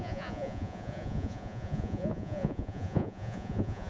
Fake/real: fake